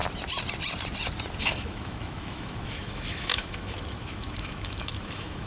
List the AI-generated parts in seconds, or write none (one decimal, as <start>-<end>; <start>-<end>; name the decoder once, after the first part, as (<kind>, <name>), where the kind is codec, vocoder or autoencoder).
1.4-5.5 (autoencoder, DAC-VAE)